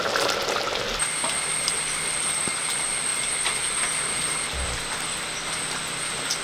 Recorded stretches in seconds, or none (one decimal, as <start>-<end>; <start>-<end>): 0.0-6.4